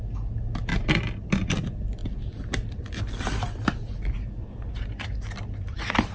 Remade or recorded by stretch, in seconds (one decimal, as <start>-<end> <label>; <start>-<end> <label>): 0.0-6.1 recorded